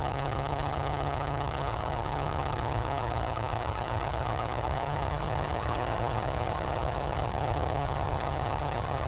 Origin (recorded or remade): remade